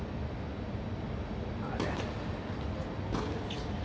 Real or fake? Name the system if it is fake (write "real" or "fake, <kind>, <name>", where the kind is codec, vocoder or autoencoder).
real